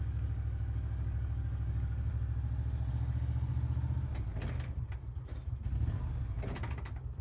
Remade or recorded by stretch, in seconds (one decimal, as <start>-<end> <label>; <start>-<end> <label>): 0.0-2.1 remade; 2.1-2.9 recorded; 2.9-3.5 remade; 3.5-6.8 recorded; 6.8-7.2 remade